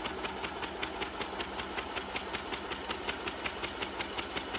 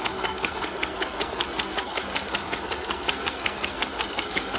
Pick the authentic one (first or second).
first